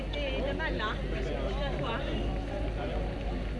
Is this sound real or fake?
real